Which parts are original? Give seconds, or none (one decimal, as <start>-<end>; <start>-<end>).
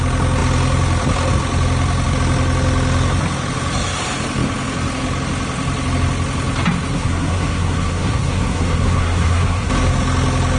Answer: 0.0-6.9; 9.7-10.6